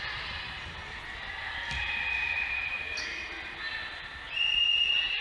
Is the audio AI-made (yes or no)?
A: no